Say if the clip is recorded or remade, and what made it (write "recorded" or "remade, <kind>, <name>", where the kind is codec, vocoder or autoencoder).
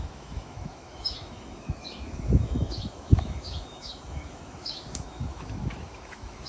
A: remade, autoencoder, DAC-VAE